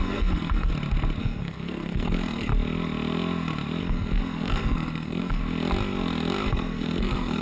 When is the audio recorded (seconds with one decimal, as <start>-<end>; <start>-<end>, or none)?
0.7-1.2; 2.5-3.8; 5.4-6.5